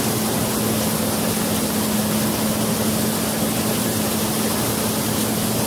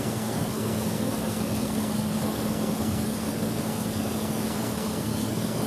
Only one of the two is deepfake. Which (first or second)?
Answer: second